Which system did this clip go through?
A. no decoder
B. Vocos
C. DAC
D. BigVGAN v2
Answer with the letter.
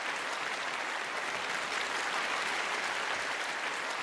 A